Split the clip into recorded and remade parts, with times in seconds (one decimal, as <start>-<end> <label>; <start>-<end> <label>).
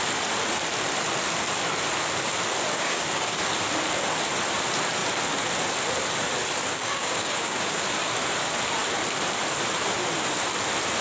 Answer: 0.0-2.7 recorded; 2.7-3.4 remade; 3.4-6.7 recorded; 6.7-7.9 remade; 7.9-11.0 recorded